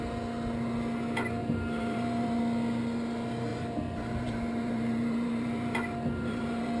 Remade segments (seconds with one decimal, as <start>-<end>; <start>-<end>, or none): 1.4-2.4; 3.5-6.8